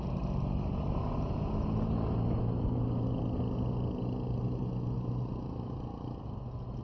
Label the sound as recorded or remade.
recorded